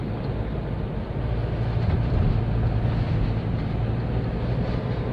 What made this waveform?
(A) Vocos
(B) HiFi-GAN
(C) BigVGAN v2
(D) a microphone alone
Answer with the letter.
D